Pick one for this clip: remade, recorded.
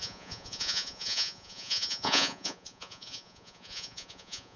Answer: remade